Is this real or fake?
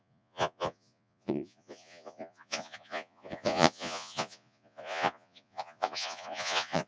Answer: fake